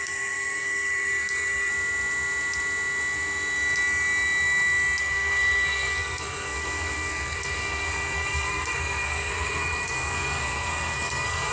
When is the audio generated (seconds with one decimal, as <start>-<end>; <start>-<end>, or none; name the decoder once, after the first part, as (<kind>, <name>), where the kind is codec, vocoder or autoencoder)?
0.0-1.7 (codec, SNAC); 5.0-11.5